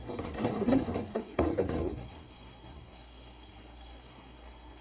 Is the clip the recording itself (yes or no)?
no